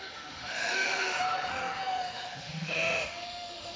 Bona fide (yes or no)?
no